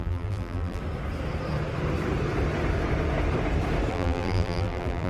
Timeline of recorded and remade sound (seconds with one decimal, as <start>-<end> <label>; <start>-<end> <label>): 0.0-0.8 remade; 0.8-3.9 recorded; 3.9-5.1 remade